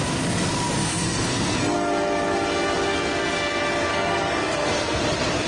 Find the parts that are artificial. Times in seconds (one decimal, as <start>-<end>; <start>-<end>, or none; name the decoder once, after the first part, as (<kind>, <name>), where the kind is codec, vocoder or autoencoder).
0.8-1.6 (codec, SNAC); 3.9-5.0